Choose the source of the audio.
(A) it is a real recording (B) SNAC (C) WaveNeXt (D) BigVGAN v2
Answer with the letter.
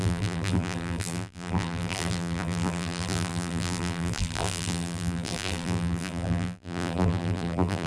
D